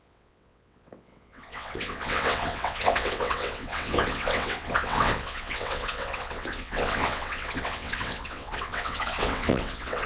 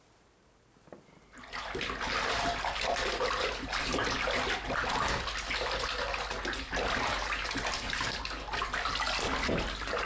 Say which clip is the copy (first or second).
first